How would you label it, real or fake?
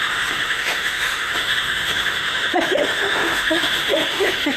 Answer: fake